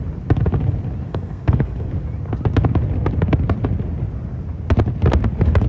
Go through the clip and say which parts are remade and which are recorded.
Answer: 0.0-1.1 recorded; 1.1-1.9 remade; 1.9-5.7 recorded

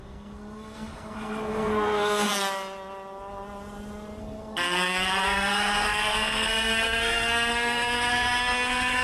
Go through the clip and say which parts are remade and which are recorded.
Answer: 0.0-2.3 remade; 2.3-4.2 recorded; 4.2-9.0 remade

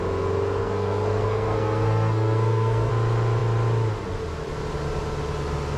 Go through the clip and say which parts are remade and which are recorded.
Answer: 0.0-0.6 recorded; 0.6-2.9 remade; 2.9-5.8 recorded